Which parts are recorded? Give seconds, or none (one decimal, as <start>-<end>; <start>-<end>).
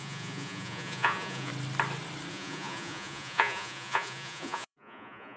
1.5-2.3